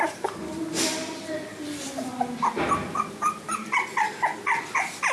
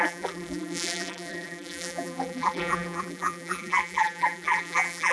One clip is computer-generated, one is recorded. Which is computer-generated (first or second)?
second